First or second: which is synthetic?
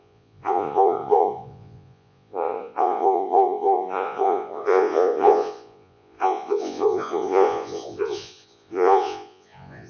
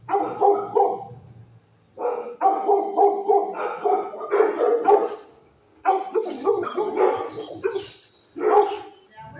first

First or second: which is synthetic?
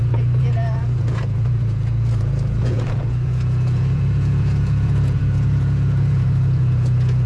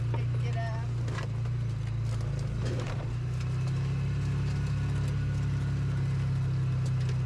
first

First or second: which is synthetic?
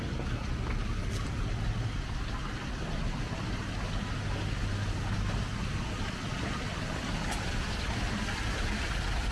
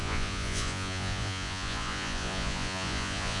second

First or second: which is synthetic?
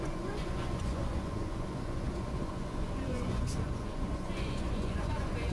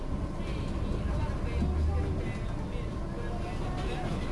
first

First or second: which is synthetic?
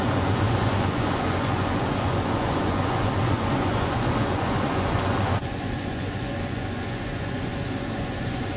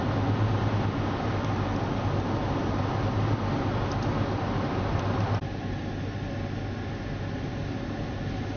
first